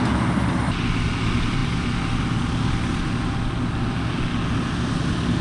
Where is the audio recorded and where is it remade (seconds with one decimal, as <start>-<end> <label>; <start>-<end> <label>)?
0.0-5.4 recorded